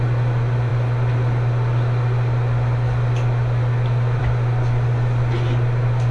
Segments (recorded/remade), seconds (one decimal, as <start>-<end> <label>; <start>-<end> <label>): 0.0-6.1 recorded

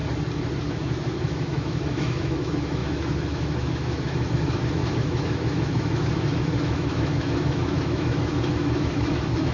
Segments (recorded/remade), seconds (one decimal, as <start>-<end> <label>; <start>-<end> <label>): 0.0-0.6 recorded; 0.6-9.5 remade

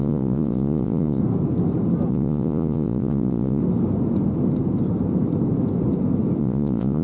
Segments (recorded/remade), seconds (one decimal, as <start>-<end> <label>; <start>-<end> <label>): 0.0-1.2 remade; 1.2-2.1 recorded; 2.1-3.6 remade; 3.6-6.4 recorded; 6.4-7.0 remade